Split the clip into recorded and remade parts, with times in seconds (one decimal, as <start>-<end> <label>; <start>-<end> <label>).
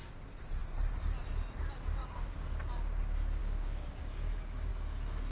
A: 0.0-2.0 recorded; 2.0-2.5 remade; 2.5-3.4 recorded; 3.4-4.0 remade; 4.0-5.3 recorded